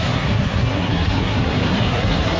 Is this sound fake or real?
fake